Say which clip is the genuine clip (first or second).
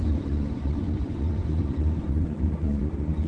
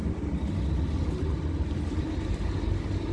second